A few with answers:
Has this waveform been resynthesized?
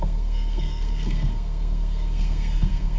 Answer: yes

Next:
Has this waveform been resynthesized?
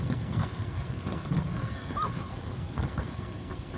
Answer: yes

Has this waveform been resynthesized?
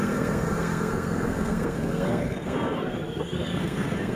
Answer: yes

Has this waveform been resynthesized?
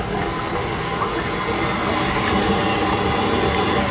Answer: no